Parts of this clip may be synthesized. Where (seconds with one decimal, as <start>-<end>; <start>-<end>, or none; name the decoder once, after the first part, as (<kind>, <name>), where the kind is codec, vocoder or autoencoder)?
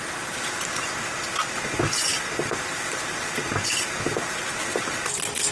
none